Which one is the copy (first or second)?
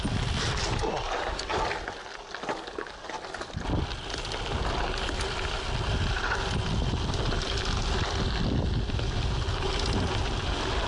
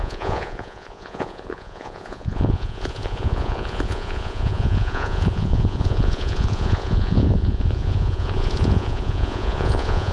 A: second